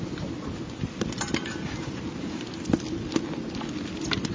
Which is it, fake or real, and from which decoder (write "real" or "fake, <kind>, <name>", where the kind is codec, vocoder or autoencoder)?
real